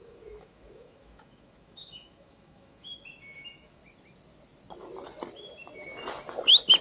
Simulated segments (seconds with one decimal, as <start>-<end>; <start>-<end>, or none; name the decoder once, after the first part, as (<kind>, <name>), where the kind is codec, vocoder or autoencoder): 0.0-3.8 (autoencoder, DAC-VAE)